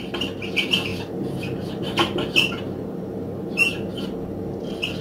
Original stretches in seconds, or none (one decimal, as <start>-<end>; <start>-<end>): 0.0-0.9; 3.9-5.0